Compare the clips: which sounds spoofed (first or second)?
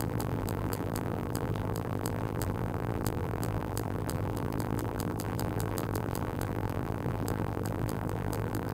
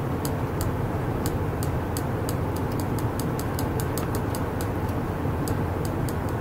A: first